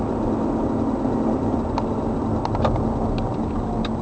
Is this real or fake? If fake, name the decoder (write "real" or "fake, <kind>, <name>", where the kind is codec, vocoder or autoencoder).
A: real